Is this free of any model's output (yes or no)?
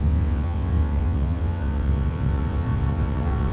no